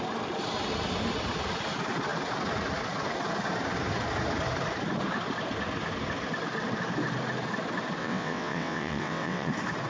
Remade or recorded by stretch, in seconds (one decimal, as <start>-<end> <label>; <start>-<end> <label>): 0.0-8.0 recorded; 8.0-9.5 remade; 9.5-9.9 recorded